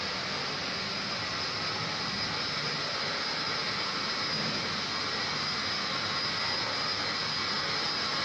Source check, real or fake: real